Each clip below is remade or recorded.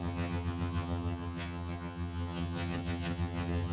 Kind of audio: remade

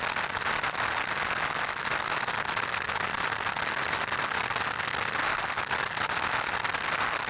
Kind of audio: recorded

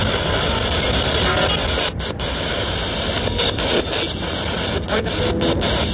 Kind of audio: recorded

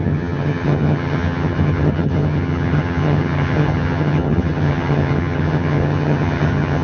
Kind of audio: remade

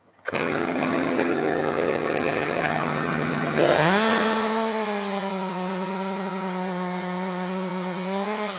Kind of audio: remade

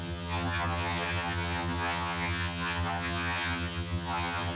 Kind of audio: remade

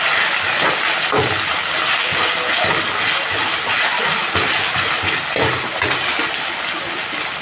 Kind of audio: recorded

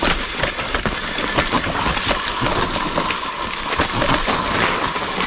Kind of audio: recorded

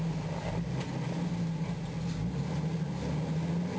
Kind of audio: recorded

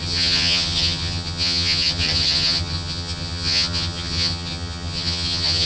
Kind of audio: remade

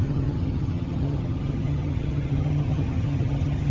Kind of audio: remade